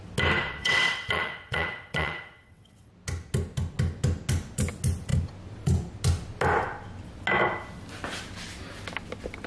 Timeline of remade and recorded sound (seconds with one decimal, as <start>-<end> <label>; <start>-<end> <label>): 0.0-0.5 recorded; 0.5-2.9 remade; 2.9-9.5 recorded